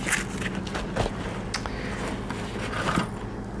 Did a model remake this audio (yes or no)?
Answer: no